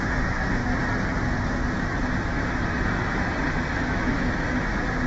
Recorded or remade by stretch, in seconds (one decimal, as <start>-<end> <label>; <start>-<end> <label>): 0.0-0.6 remade; 0.6-3.7 recorded; 3.7-5.1 remade